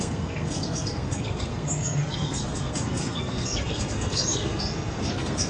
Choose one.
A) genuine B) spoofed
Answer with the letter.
B